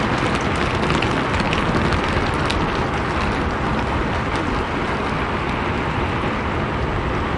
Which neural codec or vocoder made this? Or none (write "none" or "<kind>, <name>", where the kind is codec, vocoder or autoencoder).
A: none